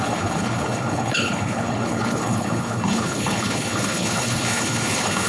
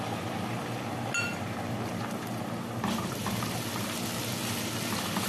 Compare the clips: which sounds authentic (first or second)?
second